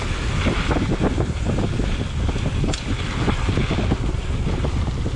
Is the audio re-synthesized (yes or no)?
no